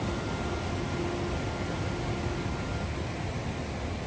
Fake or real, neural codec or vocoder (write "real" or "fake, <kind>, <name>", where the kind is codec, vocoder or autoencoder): real